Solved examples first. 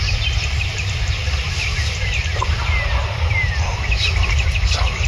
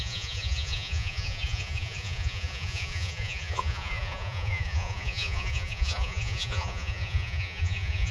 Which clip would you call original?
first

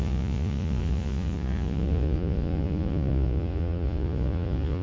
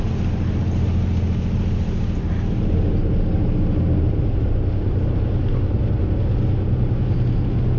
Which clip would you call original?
second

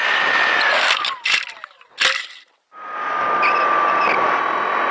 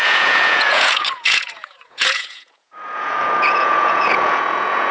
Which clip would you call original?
first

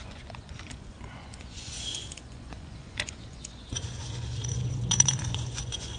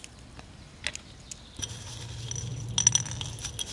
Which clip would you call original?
second